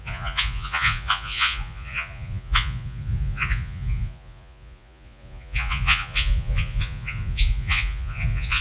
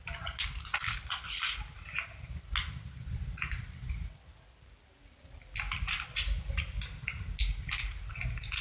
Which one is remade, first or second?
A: first